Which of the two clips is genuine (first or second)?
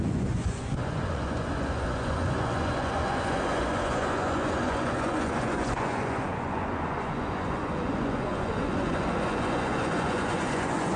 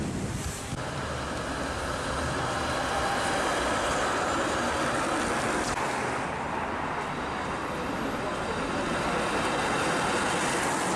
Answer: second